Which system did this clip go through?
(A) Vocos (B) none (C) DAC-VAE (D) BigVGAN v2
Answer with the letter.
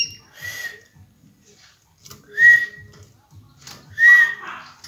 B